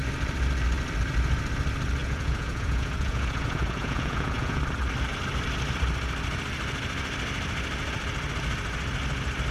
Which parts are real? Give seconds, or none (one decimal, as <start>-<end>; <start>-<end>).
0.0-2.0; 4.6-9.5